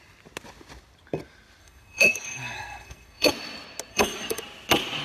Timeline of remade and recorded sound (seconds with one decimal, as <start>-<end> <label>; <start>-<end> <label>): 0.0-1.6 recorded; 1.6-3.3 remade; 3.3-3.9 recorded; 3.9-4.4 remade; 4.4-5.0 recorded